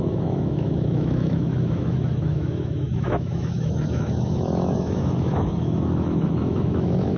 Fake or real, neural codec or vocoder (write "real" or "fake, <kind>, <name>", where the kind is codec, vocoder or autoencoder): fake, autoencoder, DAC-VAE